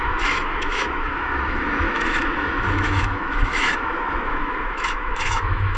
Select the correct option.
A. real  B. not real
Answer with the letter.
B